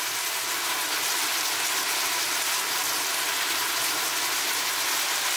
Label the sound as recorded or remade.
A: recorded